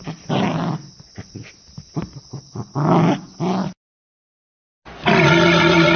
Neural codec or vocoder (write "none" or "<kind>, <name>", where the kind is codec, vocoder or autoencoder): none